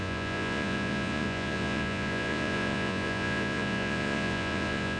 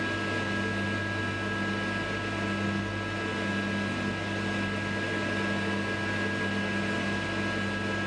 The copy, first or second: first